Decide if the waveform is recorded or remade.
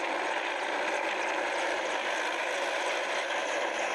remade